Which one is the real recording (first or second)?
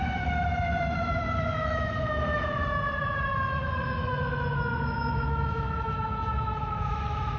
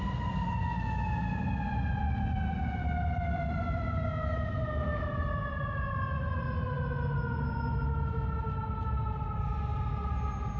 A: second